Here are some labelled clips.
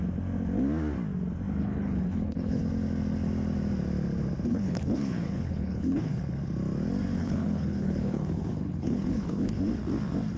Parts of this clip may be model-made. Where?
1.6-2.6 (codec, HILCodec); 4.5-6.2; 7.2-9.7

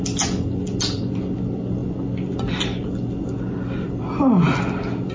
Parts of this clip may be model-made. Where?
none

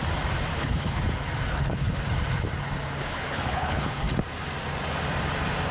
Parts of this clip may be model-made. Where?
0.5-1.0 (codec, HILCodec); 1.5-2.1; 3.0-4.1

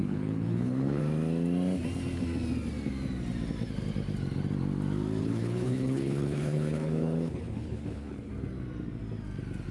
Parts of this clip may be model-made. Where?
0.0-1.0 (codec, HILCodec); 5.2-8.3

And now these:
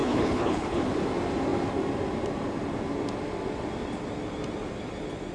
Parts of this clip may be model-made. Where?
0.0-0.8 (codec, HILCodec)